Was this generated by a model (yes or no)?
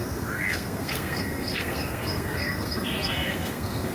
yes